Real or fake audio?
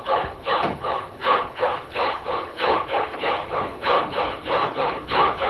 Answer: fake